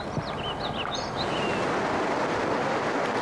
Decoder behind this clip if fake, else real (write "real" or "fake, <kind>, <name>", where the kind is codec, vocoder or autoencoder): real